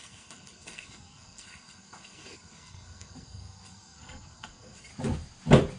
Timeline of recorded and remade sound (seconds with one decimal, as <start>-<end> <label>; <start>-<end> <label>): 0.0-4.9 remade; 4.9-5.8 recorded

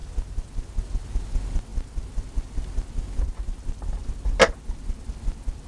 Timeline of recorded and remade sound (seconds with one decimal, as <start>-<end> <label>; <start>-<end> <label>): 0.0-5.7 recorded